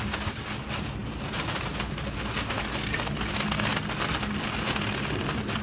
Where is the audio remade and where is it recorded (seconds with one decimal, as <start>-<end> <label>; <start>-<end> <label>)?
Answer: 0.0-1.0 recorded; 1.0-3.3 remade; 3.3-3.7 recorded; 3.7-4.5 remade; 4.5-5.6 recorded